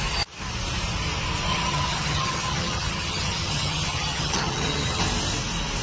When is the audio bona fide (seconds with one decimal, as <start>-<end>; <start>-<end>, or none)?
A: 0.0-1.5; 5.0-5.8